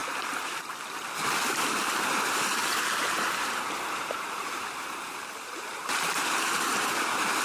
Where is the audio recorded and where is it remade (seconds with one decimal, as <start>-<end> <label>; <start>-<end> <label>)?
0.0-2.6 recorded; 2.6-7.0 remade; 7.0-7.4 recorded